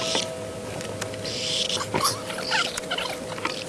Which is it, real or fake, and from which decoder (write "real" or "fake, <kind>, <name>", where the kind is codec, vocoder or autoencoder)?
real